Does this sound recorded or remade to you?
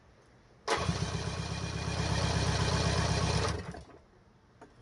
recorded